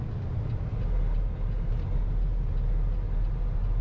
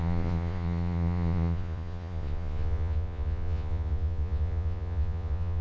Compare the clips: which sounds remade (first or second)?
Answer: second